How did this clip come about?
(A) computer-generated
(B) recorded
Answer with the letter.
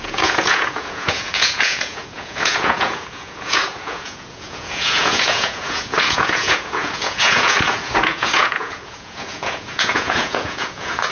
A